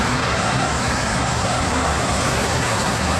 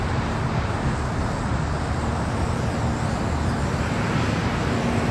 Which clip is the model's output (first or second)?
first